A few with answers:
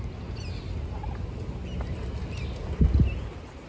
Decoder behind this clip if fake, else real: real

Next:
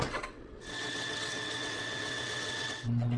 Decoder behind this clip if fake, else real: fake, vocoder, WaveNeXt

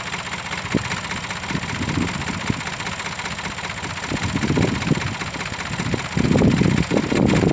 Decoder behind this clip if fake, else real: real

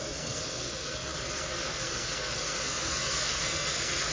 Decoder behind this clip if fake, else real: fake, codec, SNAC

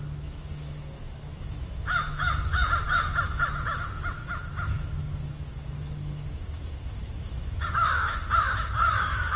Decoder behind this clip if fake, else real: fake, autoencoder, DAC-VAE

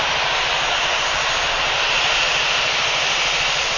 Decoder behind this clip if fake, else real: real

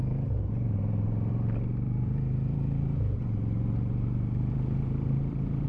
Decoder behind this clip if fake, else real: fake, vocoder, BigVGAN v2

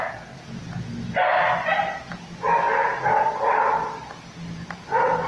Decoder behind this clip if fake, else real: real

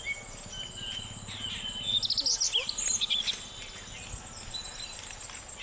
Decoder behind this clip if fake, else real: real